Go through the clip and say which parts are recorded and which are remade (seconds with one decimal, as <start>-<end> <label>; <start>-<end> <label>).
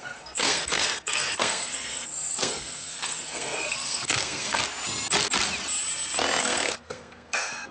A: 0.0-4.6 remade; 4.6-6.4 recorded; 6.4-7.7 remade